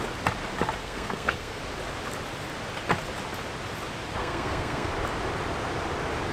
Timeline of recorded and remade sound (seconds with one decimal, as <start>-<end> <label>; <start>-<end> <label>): 0.0-0.8 recorded; 0.8-1.6 remade; 1.6-4.2 recorded; 4.2-4.9 remade; 4.9-6.3 recorded